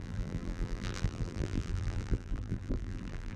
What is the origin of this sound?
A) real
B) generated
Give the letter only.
B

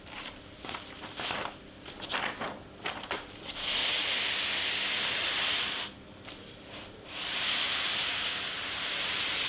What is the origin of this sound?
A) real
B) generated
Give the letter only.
A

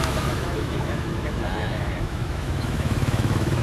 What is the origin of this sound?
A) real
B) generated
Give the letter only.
B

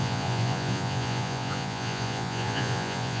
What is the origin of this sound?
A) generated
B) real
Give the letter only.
A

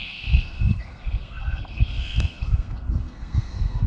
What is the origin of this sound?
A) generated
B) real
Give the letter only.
A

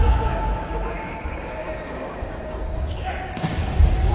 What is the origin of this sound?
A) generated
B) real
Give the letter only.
A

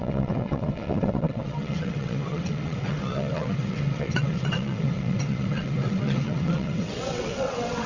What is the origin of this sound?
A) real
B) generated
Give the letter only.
B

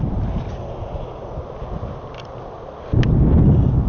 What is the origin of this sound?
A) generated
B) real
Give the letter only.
B